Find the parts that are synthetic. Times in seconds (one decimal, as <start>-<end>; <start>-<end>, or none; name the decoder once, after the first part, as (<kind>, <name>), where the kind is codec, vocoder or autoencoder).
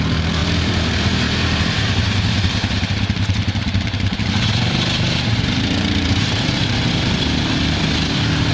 0.0-8.5 (vocoder, BigVGAN v2)